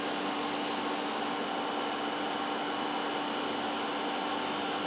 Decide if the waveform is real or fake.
real